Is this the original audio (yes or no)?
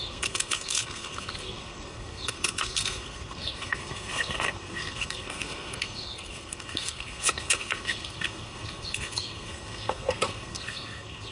no